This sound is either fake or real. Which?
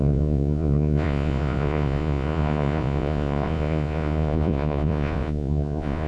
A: fake